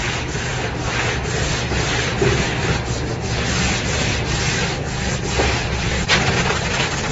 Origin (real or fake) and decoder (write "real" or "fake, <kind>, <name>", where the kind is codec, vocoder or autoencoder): real